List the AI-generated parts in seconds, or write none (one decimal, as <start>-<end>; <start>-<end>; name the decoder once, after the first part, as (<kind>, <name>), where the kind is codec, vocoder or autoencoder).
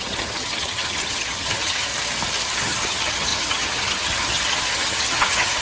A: 0.0-1.9 (vocoder, HiFi-GAN); 2.5-5.6